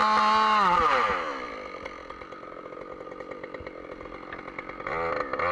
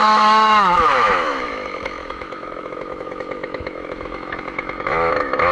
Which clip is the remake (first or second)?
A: second